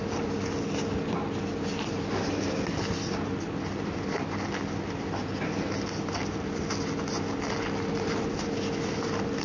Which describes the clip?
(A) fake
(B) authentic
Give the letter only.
B